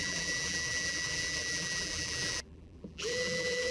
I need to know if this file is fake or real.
fake